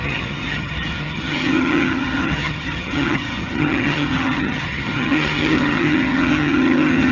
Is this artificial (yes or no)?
yes